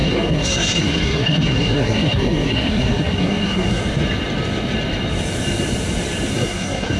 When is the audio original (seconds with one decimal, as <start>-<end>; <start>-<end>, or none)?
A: 3.8-6.3